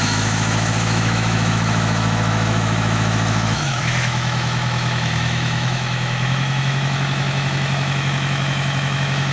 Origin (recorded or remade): remade